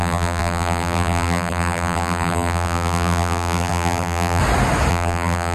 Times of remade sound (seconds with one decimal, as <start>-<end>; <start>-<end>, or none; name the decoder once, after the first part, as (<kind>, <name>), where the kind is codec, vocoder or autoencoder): 0.0-4.4 (vocoder, BigVGAN v2); 4.9-5.5

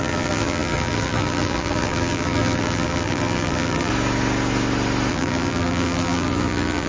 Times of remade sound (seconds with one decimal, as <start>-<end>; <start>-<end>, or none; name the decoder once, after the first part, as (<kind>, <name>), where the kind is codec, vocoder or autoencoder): 0.0-3.9 (vocoder, BigVGAN v2); 5.1-6.9

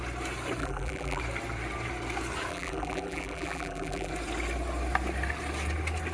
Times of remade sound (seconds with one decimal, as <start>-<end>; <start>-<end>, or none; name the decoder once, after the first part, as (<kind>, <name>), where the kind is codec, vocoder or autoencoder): 0.6-1.2 (vocoder, BigVGAN v2); 2.5-4.1

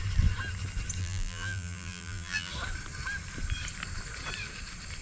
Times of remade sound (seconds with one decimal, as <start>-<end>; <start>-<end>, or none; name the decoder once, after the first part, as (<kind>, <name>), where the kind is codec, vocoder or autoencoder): 1.0-2.5 (vocoder, BigVGAN v2)